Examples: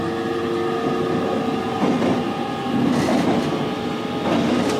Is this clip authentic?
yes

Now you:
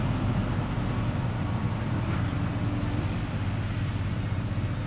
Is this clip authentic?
yes